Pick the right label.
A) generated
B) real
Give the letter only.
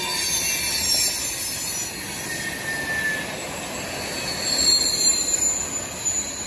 B